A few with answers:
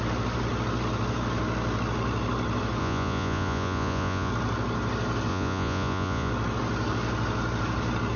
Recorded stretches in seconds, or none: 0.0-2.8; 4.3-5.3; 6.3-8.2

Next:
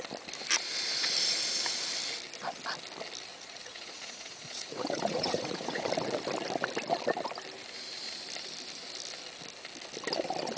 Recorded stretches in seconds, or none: 0.0-3.3; 5.9-10.6

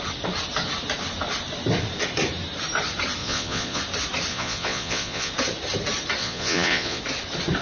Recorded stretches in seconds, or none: 0.0-3.2; 3.8-4.3; 5.3-6.2; 7.0-7.6

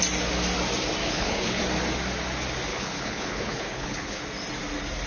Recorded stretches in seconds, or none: 0.0-1.0; 1.6-2.7; 4.2-5.1

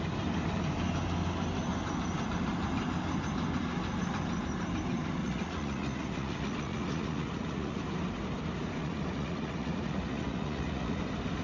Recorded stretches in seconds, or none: 0.0-5.2; 7.8-8.8; 11.0-11.4

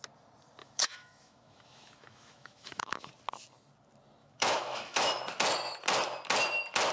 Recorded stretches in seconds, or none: 0.0-0.6; 3.1-4.2; 5.2-6.9